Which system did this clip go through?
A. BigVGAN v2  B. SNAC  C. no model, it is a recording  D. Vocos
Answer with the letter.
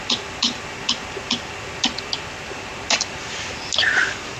C